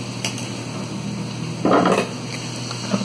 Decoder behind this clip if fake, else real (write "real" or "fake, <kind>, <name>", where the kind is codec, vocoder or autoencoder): real